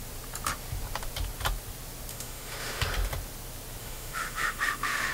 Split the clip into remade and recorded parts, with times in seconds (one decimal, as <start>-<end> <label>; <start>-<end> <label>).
0.0-2.1 recorded; 2.1-2.8 remade; 2.8-3.8 recorded; 3.8-5.1 remade